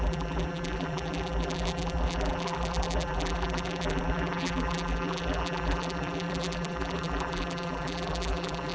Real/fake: fake